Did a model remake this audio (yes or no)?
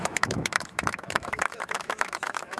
yes